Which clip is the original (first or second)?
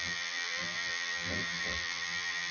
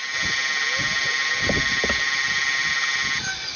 second